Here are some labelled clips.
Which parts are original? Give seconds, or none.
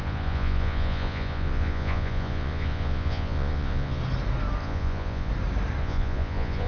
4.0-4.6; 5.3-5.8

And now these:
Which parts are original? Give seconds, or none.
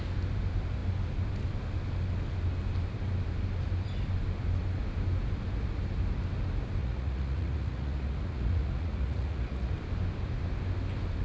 0.0-6.8; 9.7-11.2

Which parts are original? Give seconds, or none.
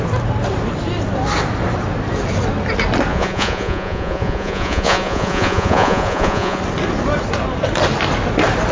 0.0-3.1; 6.6-8.7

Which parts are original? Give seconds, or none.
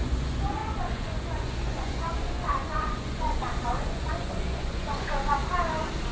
5.4-6.1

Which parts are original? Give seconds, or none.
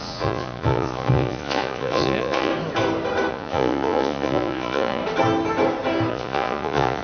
2.5-3.3; 5.0-6.1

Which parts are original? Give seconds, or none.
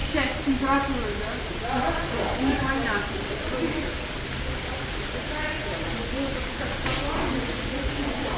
0.0-5.2; 6.1-7.3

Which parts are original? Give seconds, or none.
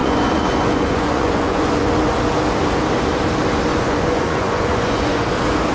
1.9-3.7; 5.3-5.7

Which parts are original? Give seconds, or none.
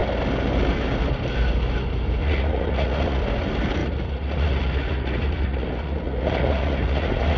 0.0-2.2; 3.2-3.8